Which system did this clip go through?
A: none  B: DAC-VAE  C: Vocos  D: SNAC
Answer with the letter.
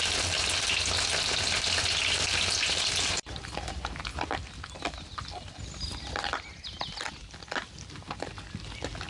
A